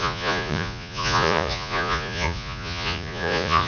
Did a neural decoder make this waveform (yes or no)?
yes